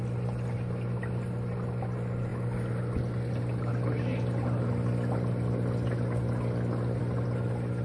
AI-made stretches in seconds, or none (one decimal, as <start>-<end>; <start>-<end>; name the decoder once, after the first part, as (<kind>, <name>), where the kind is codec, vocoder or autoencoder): none